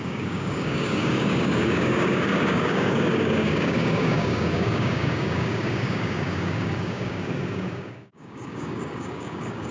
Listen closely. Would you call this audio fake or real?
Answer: fake